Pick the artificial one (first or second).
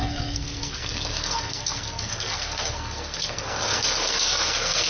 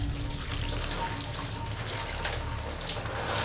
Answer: first